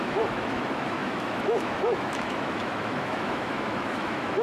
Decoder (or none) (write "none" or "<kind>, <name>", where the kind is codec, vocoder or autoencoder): autoencoder, DAC-VAE